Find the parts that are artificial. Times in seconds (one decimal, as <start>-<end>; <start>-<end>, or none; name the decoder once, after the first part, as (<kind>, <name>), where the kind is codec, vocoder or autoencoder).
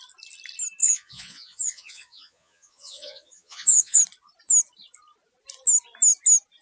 0.8-4.0 (vocoder, Vocos)